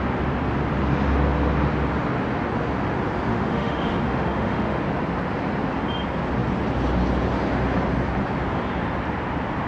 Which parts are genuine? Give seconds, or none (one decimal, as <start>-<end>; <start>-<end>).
0.0-3.3; 4.8-9.7